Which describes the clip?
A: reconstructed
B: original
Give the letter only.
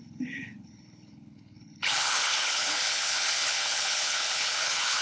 A